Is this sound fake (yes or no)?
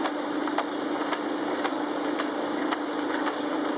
no